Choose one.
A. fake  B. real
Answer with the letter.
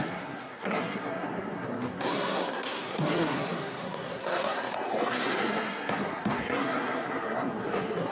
A